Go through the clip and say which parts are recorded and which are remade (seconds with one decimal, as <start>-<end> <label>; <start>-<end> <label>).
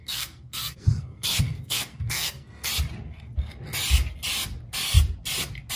0.0-2.7 remade; 2.7-5.8 recorded